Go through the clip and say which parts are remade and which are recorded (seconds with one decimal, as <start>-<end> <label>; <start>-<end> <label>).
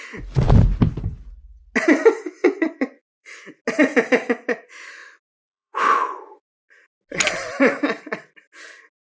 0.0-2.4 recorded; 2.4-3.4 remade; 3.4-5.0 recorded; 5.0-6.7 remade; 6.7-9.0 recorded